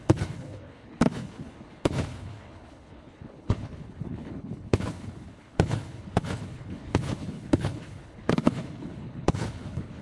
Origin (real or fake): fake